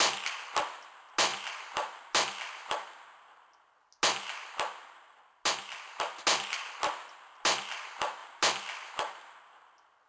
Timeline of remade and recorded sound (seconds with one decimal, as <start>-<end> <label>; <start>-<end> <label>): 0.0-10.1 recorded